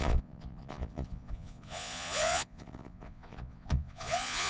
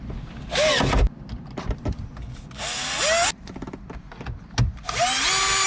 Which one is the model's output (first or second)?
first